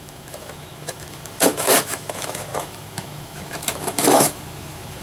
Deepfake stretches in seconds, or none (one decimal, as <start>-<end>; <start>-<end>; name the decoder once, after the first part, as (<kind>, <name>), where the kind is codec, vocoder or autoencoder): 0.0-5.0 (autoencoder, DAC-VAE)